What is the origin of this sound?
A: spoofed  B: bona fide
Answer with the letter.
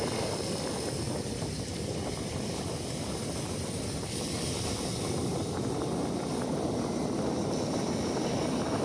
B